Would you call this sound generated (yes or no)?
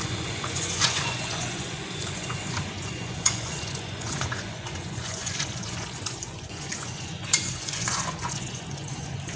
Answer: yes